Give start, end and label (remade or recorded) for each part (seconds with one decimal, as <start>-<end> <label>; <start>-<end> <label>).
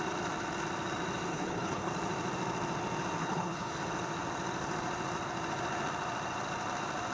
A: 0.0-1.3 recorded; 1.3-1.9 remade; 1.9-3.2 recorded; 3.2-3.8 remade; 3.8-7.1 recorded